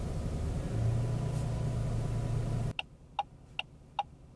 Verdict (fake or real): real